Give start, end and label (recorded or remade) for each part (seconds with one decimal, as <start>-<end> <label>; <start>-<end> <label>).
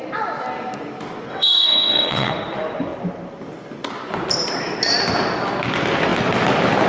0.0-1.3 recorded; 1.3-2.3 remade; 2.3-6.9 recorded